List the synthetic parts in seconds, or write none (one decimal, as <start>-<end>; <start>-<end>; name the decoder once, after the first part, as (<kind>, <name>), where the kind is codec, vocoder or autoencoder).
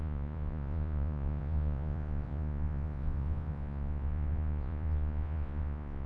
0.0-6.1 (vocoder, Vocos)